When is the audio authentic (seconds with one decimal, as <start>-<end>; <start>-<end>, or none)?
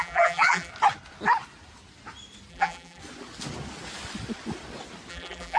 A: 0.7-2.5; 3.0-5.1